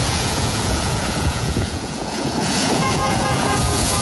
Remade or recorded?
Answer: remade